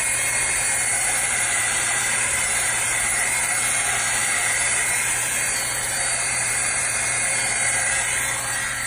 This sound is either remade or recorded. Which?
remade